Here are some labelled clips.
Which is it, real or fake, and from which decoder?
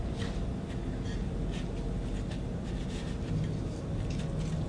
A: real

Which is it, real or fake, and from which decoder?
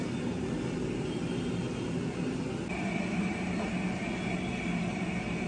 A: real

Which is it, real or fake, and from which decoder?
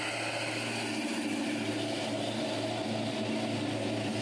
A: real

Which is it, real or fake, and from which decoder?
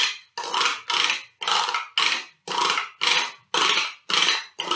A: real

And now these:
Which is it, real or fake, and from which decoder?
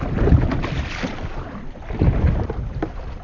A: real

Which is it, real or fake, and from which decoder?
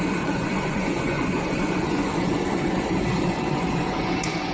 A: fake, vocoder, Vocos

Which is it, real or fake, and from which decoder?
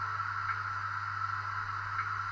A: real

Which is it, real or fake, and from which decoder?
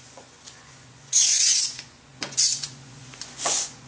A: fake, vocoder, Vocos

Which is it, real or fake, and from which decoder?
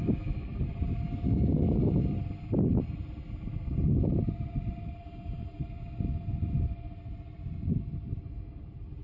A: real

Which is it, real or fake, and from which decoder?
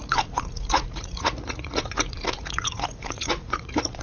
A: fake, vocoder, Vocos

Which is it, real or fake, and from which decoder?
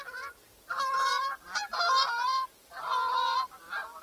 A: fake, vocoder, Vocos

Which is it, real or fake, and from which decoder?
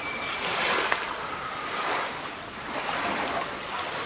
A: real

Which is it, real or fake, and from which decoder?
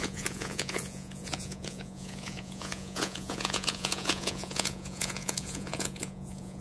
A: fake, vocoder, Vocos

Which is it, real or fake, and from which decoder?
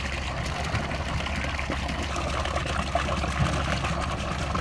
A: real